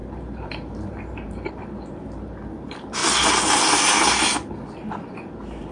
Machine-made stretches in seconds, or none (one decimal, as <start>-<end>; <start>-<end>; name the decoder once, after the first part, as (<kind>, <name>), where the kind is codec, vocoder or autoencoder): 0.0-3.0 (vocoder, BigVGAN v2); 4.9-5.7